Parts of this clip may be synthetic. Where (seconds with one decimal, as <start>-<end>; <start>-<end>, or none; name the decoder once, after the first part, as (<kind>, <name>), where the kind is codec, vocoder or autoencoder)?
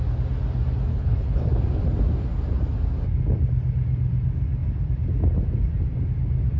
0.9-1.5 (codec, HILCodec)